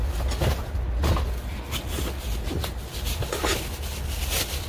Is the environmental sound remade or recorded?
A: recorded